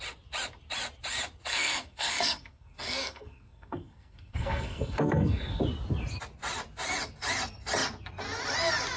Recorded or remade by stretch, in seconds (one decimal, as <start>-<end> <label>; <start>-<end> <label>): 0.0-1.5 recorded; 1.5-5.6 remade; 5.6-9.0 recorded